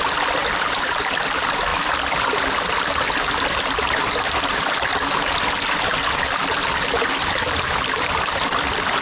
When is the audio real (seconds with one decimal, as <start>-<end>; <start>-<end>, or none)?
0.0-1.7; 4.7-6.6